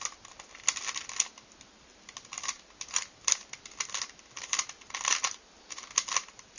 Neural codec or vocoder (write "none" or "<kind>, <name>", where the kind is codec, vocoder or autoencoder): none